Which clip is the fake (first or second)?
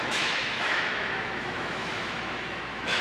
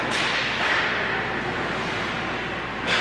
first